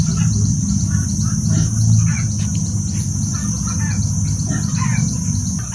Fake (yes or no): no